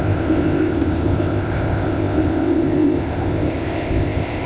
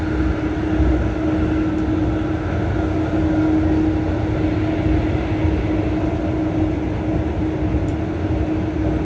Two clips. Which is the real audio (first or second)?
second